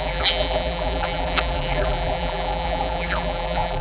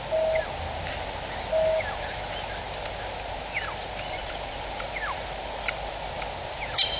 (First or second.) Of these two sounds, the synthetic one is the first